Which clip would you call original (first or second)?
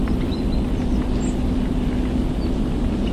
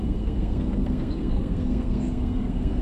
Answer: first